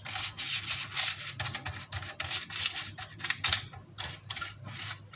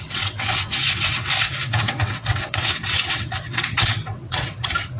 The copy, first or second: second